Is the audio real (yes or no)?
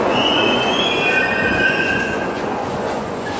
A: no